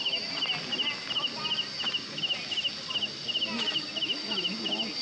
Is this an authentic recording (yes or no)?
yes